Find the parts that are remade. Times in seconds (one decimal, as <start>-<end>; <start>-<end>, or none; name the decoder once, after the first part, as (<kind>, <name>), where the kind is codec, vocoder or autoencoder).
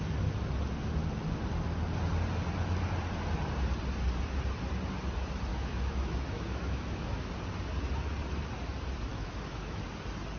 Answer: 5.5-7.3 (autoencoder, DAC-VAE); 9.1-9.8